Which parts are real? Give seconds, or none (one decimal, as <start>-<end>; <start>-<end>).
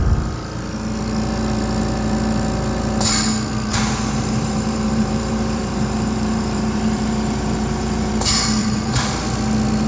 0.0-3.7; 8.1-8.6; 9.1-9.9